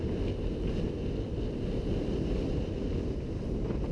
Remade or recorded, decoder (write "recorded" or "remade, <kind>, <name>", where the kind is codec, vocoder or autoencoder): recorded